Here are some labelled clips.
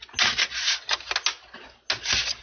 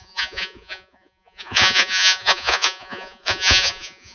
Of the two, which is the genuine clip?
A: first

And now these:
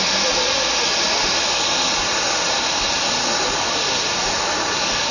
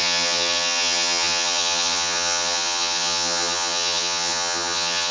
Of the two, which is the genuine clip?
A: first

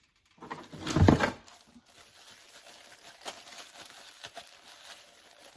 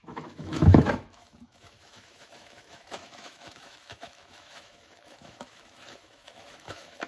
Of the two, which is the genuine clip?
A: first